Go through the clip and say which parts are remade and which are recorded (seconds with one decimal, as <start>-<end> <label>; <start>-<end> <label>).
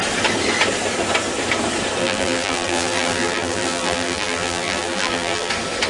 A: 0.0-2.0 recorded; 2.0-5.5 remade; 5.5-5.9 recorded